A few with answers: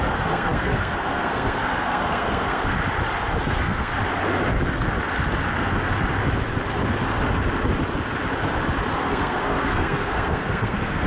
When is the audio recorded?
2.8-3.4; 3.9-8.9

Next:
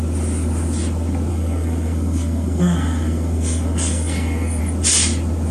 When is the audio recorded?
0.0-1.3; 4.6-5.5

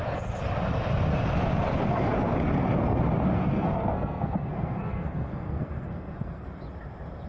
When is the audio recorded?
0.0-3.3; 6.6-7.3

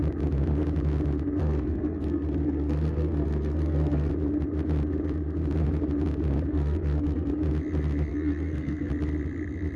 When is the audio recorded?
0.0-1.4; 4.1-6.5; 7.3-8.1; 8.9-9.8

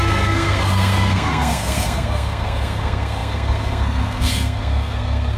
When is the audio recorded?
none

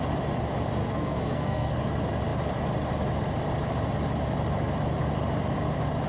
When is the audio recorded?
0.0-0.8; 1.8-6.1

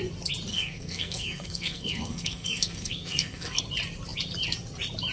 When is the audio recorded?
0.0-0.5; 3.6-5.1